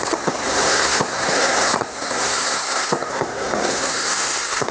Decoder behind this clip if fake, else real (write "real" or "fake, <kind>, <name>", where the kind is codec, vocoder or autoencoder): fake, codec, SNAC